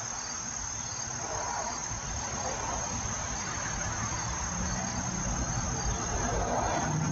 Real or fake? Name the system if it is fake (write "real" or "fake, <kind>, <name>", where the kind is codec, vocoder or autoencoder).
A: real